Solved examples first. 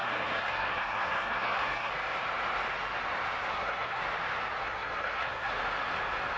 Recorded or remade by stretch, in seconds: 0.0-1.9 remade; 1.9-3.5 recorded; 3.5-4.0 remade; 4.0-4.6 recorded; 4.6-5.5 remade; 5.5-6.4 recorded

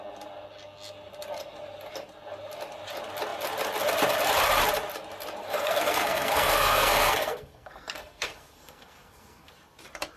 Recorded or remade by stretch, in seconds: 0.0-5.4 recorded; 5.4-9.5 remade; 9.5-10.2 recorded